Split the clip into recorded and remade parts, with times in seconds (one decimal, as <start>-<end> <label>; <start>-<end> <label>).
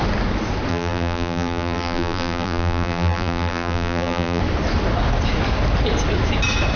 0.0-0.7 recorded; 0.7-4.4 remade; 4.4-6.8 recorded